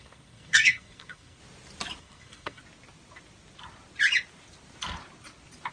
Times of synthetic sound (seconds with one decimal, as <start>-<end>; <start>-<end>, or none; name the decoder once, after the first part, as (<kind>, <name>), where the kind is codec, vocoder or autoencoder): 0.0-1.4 (codec, SNAC); 2.0-2.6